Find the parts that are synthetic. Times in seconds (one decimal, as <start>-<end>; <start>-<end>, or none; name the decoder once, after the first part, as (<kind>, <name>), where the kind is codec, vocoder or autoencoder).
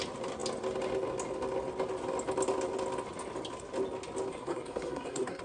4.3-5.4 (codec, SNAC)